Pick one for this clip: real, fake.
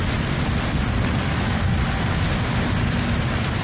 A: fake